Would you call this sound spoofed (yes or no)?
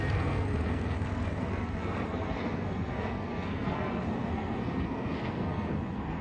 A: yes